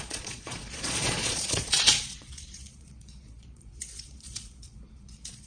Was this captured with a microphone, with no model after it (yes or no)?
no